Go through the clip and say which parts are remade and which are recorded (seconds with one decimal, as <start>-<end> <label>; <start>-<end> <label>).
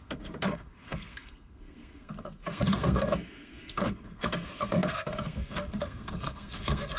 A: 0.0-7.0 remade